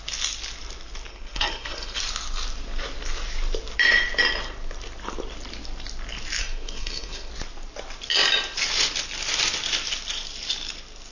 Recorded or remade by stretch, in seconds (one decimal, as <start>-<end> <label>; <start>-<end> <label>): 0.0-1.1 recorded; 1.1-2.0 remade; 2.0-6.4 recorded; 6.4-7.3 remade; 7.3-11.1 recorded

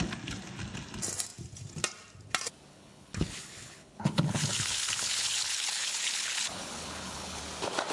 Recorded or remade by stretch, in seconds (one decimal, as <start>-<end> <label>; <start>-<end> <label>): 0.0-2.7 recorded; 2.7-7.4 remade; 7.4-7.9 recorded

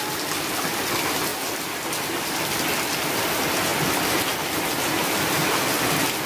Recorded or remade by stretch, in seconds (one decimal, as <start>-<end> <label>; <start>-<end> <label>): 0.0-6.3 recorded